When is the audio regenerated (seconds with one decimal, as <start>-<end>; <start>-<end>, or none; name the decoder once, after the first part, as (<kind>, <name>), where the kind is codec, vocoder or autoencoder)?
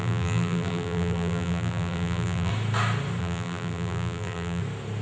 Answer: 0.0-2.5 (vocoder, BigVGAN v2); 3.2-4.6